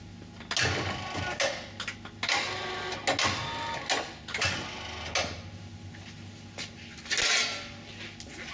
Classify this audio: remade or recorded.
recorded